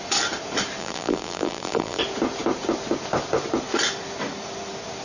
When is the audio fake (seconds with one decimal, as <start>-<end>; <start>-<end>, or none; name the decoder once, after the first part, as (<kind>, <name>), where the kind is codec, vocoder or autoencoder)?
0.8-2.0 (vocoder, BigVGAN v2)